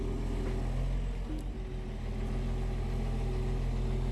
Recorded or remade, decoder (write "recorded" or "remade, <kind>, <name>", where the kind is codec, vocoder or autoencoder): recorded